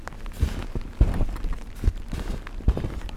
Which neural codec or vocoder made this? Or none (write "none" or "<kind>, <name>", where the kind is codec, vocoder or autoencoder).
none